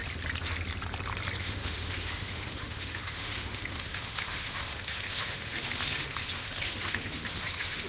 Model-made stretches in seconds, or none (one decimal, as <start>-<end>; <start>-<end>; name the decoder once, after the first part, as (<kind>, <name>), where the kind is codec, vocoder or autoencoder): 1.4-7.9 (autoencoder, DAC-VAE)